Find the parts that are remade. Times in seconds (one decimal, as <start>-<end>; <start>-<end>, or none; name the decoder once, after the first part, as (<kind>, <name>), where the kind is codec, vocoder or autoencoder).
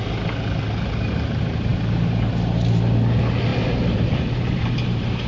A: 3.5-5.3 (vocoder, BigVGAN v2)